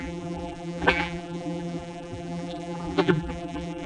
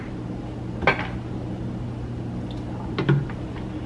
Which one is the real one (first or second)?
second